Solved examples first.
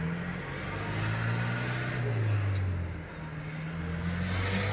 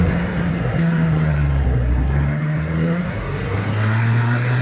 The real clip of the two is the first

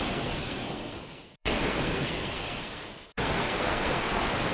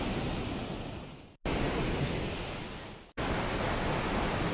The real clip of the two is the second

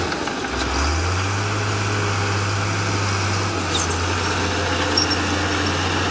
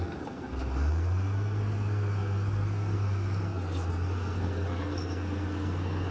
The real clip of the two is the first